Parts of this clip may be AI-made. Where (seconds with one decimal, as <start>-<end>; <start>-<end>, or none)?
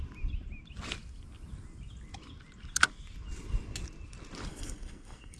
4.5-5.4